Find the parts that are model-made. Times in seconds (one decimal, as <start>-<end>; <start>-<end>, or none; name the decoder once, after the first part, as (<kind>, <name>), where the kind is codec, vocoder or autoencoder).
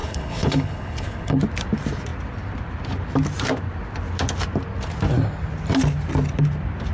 0.0-1.4 (codec, HILCodec)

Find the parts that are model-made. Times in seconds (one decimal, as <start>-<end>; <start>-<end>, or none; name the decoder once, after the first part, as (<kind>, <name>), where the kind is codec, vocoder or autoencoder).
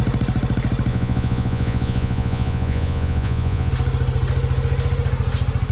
0.9-3.7 (vocoder, Vocos)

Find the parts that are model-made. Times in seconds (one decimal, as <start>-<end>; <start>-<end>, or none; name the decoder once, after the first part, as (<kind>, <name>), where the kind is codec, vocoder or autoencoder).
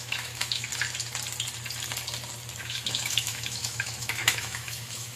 0.0-0.7 (autoencoder, DAC-VAE); 2.6-5.2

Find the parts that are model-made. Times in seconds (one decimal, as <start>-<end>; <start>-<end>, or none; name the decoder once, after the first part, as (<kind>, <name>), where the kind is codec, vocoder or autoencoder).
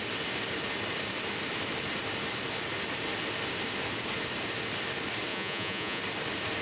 5.3-6.0 (vocoder, Vocos)